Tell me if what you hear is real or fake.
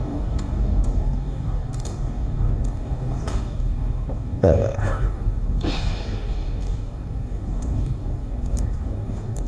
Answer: fake